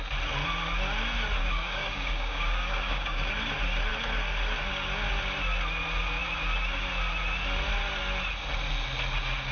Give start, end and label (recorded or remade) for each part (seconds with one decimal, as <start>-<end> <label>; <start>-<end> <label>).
0.0-1.4 recorded; 1.4-3.3 remade; 3.3-9.5 recorded